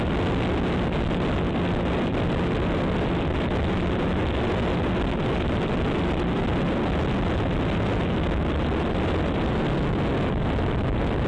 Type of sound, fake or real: real